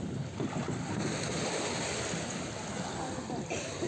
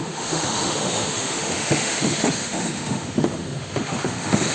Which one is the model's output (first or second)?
second